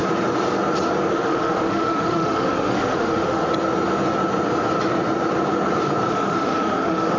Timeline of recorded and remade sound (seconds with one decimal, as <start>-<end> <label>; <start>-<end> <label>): 0.0-1.1 recorded; 1.1-3.4 remade; 3.4-6.1 recorded; 6.1-7.2 remade